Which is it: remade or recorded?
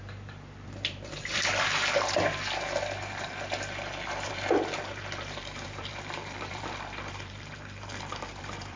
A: remade